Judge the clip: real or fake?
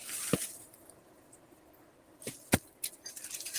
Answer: real